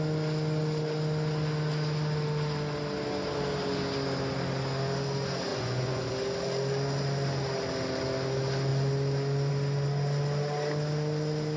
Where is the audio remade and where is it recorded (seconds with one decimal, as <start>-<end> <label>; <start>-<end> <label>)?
0.0-5.5 recorded; 5.5-6.1 remade; 6.1-11.6 recorded